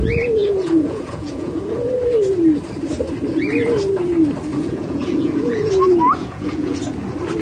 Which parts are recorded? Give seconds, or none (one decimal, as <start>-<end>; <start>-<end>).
0.0-0.4; 1.9-4.5; 5.7-6.2; 6.8-7.4

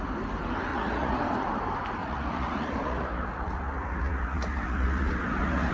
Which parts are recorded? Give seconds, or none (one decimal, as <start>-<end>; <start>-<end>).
0.0-0.7; 1.2-2.0